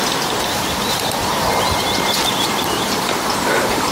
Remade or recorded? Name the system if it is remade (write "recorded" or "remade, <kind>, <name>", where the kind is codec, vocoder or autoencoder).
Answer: remade, vocoder, BigVGAN v2